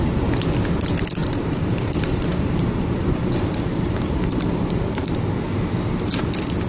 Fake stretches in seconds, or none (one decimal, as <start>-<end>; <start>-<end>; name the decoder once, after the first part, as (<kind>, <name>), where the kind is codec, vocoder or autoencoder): 1.2-5.1 (vocoder, BigVGAN v2)